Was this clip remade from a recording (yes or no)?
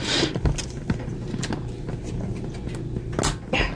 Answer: no